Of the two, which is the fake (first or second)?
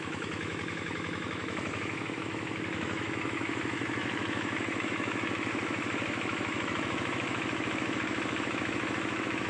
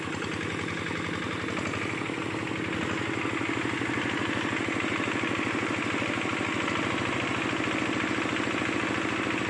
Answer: first